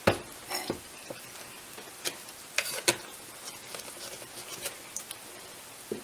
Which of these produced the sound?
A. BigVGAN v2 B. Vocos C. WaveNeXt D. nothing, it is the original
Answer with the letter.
D